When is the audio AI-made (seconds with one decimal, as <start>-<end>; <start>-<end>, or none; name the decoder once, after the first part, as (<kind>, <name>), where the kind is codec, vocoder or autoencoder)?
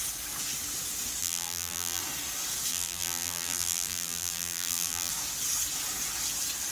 1.2-2.0 (vocoder, BigVGAN v2); 2.7-5.1